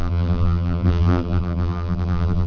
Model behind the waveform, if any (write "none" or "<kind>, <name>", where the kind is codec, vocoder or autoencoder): vocoder, BigVGAN v2